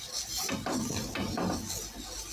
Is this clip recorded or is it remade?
recorded